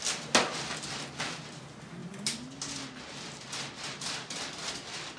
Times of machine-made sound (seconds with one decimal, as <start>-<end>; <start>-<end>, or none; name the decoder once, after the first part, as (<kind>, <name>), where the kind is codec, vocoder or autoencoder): none